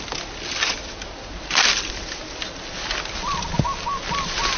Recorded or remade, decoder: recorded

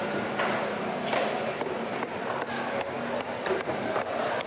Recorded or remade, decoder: recorded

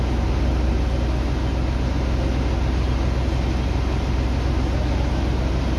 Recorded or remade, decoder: recorded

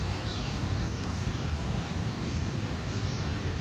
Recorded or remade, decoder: remade, codec, DAC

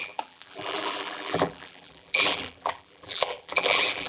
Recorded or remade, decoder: remade, vocoder, BigVGAN v2